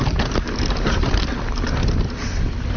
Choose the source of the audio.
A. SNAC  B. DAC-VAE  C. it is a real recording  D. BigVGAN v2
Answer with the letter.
D